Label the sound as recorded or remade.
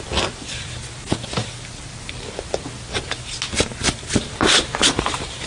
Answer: recorded